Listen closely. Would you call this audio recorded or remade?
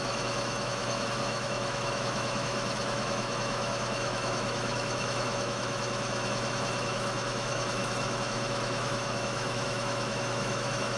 remade